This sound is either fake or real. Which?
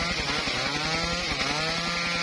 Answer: real